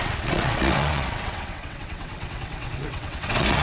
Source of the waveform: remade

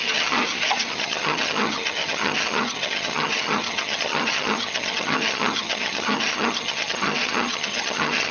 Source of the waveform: remade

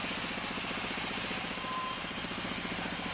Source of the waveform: recorded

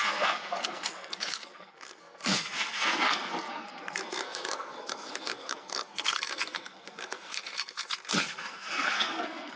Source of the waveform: remade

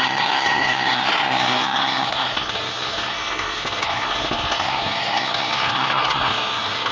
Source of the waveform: remade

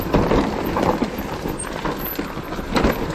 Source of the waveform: remade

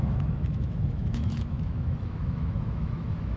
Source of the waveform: remade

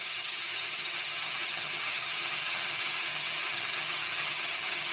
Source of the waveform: remade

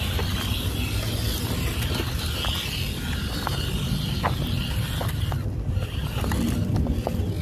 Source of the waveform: recorded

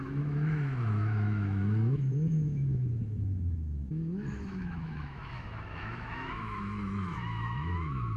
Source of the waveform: remade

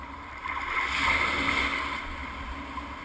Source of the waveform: recorded